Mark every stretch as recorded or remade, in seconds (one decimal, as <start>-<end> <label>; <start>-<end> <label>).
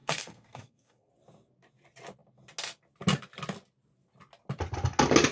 0.0-1.1 remade; 1.1-5.3 recorded